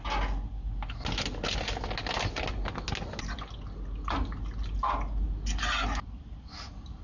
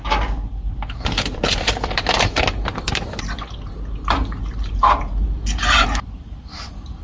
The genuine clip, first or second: first